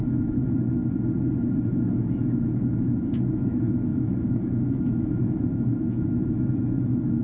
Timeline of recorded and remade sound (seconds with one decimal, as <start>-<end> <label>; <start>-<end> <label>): 0.0-0.8 remade; 0.8-1.7 recorded; 1.7-7.2 remade

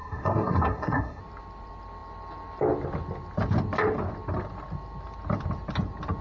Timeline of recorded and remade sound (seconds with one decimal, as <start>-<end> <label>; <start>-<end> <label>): 0.0-1.2 remade; 1.2-6.2 recorded

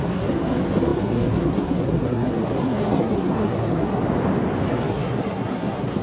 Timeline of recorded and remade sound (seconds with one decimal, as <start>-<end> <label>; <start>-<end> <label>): 0.0-4.0 remade; 4.0-4.7 recorded; 4.7-6.0 remade

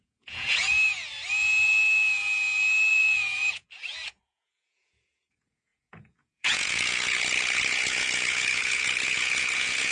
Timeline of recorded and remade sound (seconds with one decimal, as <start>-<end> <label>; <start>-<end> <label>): 0.0-1.1 remade; 1.1-2.9 recorded; 2.9-9.9 remade

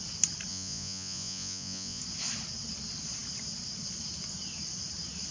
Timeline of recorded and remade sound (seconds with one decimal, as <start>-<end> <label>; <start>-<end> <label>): 0.0-0.5 recorded; 0.5-2.0 remade; 2.0-5.3 recorded